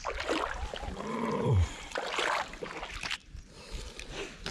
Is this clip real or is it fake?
real